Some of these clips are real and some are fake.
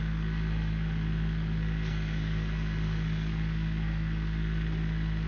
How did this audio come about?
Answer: fake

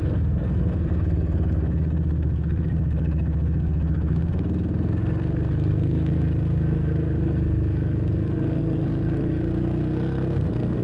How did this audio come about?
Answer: fake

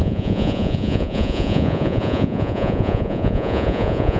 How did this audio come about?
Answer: fake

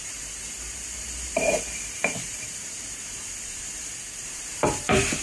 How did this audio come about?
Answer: fake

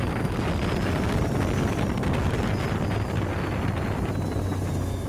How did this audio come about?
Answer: real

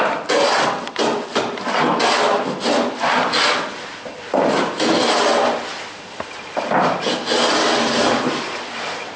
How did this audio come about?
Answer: real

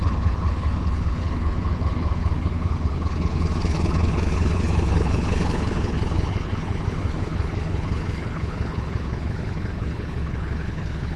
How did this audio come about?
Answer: fake